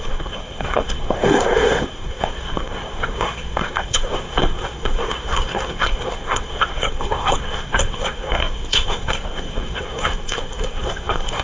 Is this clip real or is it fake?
fake